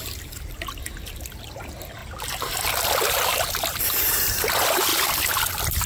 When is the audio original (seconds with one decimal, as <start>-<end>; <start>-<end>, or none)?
0.0-5.9